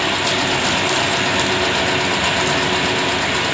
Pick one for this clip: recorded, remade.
recorded